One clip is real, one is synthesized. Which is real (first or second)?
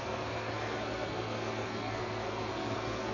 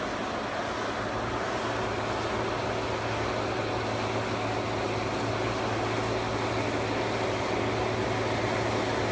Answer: second